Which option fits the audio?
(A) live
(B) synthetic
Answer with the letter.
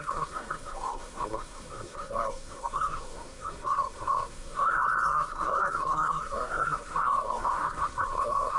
B